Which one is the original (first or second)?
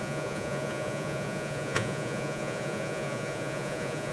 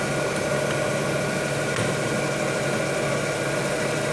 second